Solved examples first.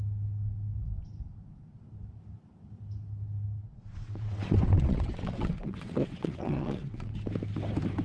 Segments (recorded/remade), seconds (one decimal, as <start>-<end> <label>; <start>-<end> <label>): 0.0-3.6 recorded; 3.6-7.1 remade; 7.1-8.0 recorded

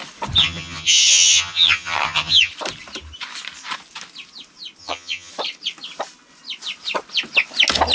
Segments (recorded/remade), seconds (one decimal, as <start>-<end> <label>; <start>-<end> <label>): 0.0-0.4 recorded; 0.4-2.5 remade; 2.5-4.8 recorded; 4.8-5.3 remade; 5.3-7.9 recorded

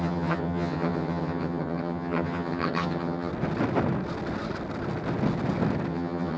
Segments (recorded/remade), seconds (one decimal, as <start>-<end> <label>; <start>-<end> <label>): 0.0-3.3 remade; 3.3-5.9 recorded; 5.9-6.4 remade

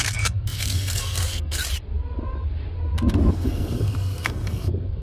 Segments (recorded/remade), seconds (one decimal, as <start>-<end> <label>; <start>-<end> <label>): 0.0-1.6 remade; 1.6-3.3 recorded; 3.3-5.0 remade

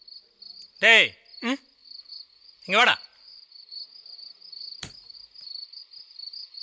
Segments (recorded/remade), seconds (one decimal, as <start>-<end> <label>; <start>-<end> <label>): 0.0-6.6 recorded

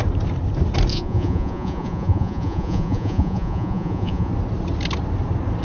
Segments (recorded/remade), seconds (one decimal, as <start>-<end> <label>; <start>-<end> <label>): 0.0-0.9 recorded; 0.9-4.3 remade; 4.3-5.6 recorded

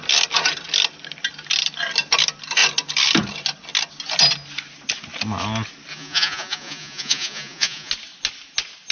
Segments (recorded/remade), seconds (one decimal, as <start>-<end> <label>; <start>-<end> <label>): 0.0-5.9 recorded; 5.9-7.9 remade; 7.9-8.9 recorded